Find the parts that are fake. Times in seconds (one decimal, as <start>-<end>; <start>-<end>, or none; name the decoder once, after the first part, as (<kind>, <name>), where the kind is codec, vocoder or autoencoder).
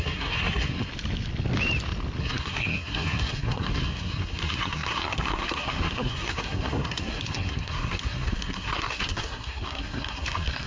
0.0-0.9 (codec, SNAC); 2.2-10.7